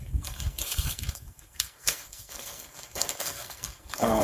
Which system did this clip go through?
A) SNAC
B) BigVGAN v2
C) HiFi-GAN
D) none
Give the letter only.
A